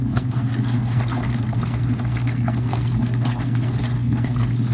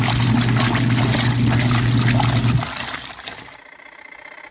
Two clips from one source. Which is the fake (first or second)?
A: first